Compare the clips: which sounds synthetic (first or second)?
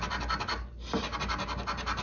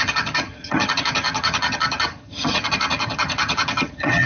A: second